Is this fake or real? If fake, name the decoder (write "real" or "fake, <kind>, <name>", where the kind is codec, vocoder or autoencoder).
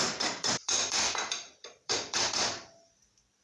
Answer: fake, vocoder, BigVGAN v2